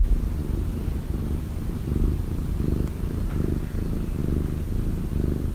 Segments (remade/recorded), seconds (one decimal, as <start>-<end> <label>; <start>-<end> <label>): 0.0-0.4 recorded; 0.4-3.6 remade; 3.6-5.5 recorded

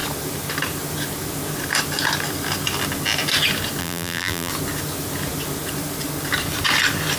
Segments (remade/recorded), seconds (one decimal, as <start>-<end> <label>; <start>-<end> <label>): 0.0-3.8 recorded; 3.8-4.5 remade; 4.5-7.2 recorded